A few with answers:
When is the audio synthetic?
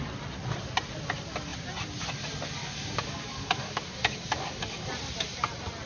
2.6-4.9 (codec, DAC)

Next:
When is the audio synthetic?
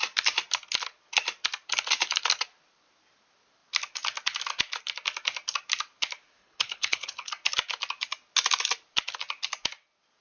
6.4-7.3 (codec, HILCodec)